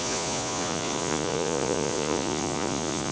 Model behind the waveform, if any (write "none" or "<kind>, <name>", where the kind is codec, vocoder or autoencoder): vocoder, Vocos